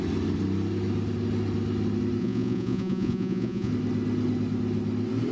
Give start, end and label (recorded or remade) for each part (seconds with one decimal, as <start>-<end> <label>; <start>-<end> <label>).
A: 0.0-2.2 recorded; 2.2-3.7 remade; 3.7-5.3 recorded

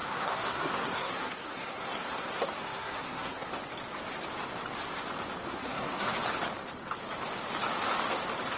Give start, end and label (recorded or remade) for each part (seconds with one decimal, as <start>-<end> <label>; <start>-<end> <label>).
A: 0.0-3.5 remade; 3.5-5.5 recorded; 5.5-6.1 remade; 6.1-8.6 recorded

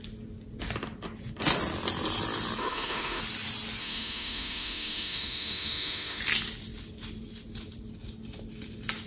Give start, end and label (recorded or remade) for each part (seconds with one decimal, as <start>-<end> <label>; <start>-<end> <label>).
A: 0.0-2.6 recorded; 2.6-3.2 remade; 3.2-3.8 recorded; 3.8-6.2 remade; 6.2-9.1 recorded

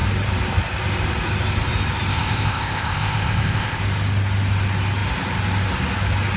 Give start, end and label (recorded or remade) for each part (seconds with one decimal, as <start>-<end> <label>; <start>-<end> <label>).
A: 0.0-2.1 recorded; 2.1-3.8 remade; 3.8-6.4 recorded

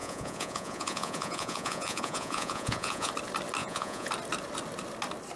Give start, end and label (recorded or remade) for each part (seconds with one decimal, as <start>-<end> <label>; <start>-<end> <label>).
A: 0.0-3.1 remade; 3.1-3.6 recorded; 3.6-4.1 remade; 4.1-5.4 recorded